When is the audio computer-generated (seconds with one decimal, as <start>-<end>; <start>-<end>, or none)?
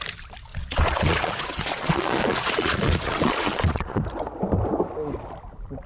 0.5-4.0